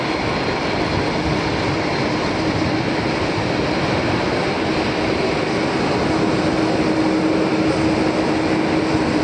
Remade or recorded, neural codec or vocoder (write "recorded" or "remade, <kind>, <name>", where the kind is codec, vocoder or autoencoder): recorded